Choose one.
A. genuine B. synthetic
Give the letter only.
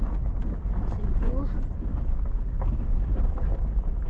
A